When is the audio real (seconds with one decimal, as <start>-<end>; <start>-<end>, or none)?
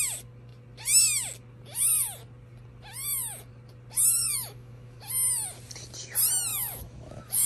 0.0-4.2; 5.0-6.5